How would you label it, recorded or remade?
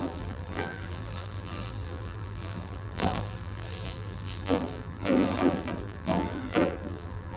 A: remade